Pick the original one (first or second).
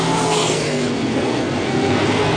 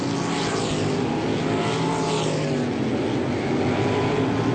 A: second